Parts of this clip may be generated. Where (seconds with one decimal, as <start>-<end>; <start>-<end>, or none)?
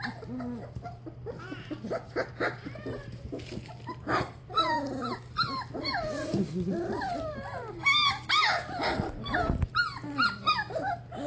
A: none